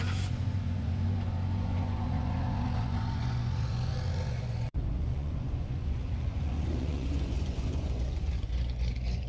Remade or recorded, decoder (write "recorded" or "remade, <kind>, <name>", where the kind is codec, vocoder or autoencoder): remade, vocoder, Vocos